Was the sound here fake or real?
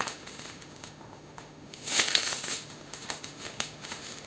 fake